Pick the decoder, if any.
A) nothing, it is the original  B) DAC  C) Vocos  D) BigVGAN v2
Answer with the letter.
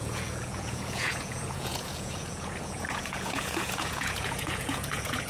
C